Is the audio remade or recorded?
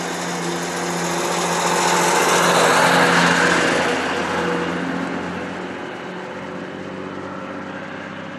recorded